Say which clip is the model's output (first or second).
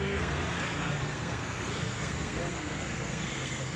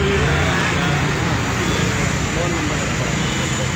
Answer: first